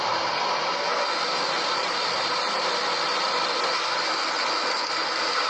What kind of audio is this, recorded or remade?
recorded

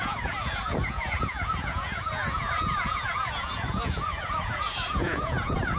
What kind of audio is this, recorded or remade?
remade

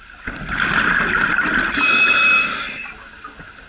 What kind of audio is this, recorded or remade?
recorded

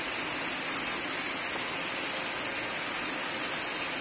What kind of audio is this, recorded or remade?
recorded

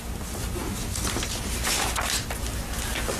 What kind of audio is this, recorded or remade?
recorded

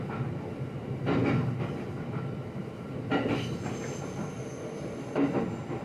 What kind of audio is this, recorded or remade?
recorded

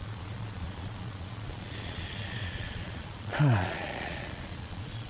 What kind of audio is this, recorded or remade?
remade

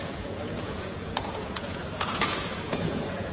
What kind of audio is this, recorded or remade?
remade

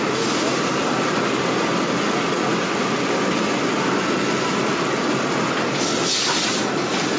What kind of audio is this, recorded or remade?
recorded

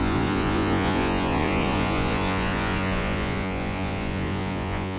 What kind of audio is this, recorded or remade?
remade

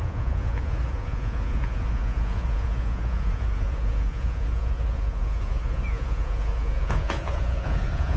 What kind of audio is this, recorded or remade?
remade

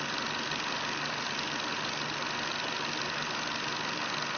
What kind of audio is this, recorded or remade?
recorded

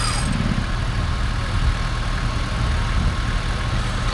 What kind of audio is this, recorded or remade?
recorded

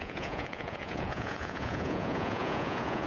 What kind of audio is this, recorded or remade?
remade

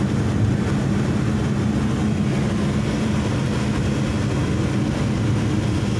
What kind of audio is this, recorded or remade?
recorded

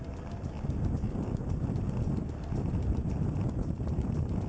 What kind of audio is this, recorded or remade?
recorded